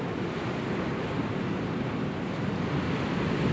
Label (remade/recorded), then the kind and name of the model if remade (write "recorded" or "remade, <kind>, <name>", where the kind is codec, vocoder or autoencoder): recorded